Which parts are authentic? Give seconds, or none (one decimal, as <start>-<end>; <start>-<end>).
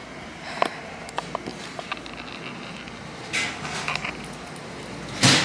0.6-5.4